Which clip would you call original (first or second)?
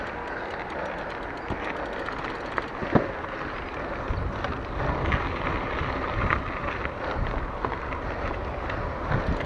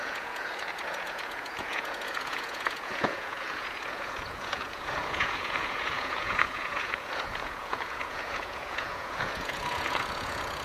first